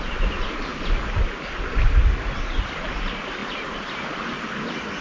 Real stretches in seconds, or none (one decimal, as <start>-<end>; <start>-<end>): 0.0-5.0